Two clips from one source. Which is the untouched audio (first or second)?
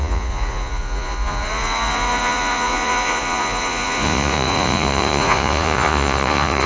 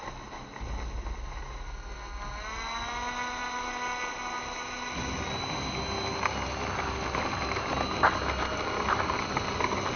second